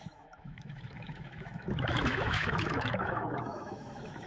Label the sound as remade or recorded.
remade